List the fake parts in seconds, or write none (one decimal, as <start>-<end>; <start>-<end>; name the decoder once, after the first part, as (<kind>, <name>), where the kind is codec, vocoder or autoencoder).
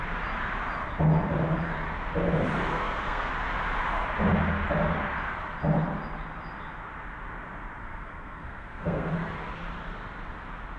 2.7-3.3 (codec, SNAC); 7.8-9.1